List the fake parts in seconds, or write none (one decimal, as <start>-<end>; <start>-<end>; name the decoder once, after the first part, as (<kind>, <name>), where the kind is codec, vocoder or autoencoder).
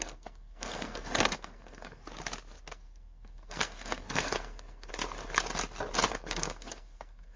0.0-2.0 (codec, SNAC); 2.7-4.9; 6.1-7.4